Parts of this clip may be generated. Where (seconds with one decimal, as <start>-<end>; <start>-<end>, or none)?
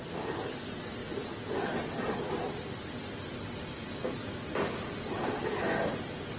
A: none